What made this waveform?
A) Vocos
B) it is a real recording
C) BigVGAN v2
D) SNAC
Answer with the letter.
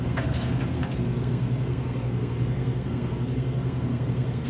D